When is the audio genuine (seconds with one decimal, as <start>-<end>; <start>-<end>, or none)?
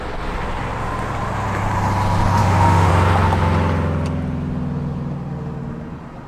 0.0-2.4; 2.9-6.3